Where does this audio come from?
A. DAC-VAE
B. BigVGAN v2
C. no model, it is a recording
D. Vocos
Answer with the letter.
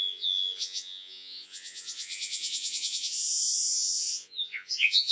D